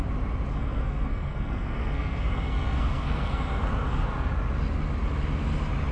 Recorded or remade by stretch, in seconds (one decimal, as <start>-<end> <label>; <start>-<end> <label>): 0.0-0.5 recorded; 0.5-4.0 remade; 4.0-5.9 recorded